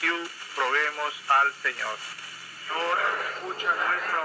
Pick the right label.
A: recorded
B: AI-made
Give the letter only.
A